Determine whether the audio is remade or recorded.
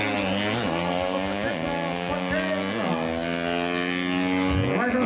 recorded